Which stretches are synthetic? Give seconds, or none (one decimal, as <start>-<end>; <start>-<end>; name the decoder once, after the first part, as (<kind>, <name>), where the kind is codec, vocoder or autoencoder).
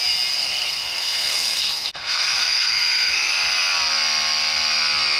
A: 0.4-3.3 (codec, SNAC)